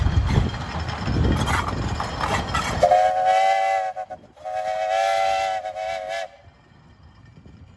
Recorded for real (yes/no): yes